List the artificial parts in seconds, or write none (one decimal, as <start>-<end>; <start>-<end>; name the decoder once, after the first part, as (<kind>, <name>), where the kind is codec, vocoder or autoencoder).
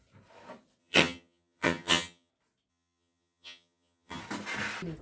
0.8-2.3 (vocoder, HiFi-GAN); 2.7-4.2